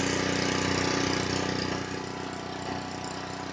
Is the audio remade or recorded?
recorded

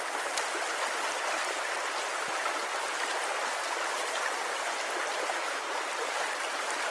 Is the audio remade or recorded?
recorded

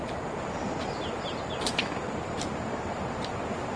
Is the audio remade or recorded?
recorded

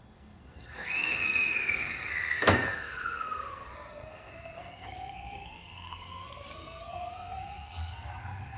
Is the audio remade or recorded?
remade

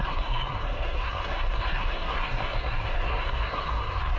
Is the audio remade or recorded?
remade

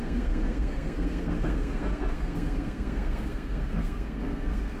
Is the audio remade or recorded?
remade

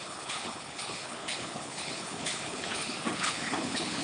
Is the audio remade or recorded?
remade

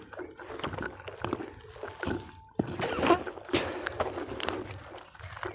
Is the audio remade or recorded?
recorded